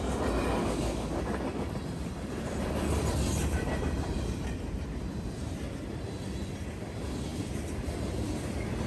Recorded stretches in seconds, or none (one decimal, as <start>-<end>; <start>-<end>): 0.0-0.6; 1.4-8.9